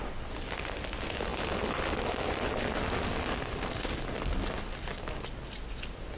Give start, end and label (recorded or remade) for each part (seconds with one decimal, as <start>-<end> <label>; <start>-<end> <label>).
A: 0.0-6.2 recorded